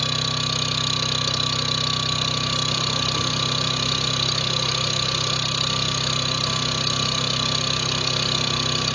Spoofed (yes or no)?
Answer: no